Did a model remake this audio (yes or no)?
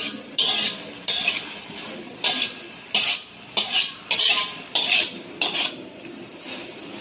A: yes